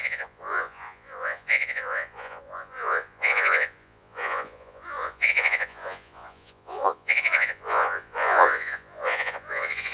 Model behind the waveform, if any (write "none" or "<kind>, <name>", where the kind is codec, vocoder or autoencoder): vocoder, Vocos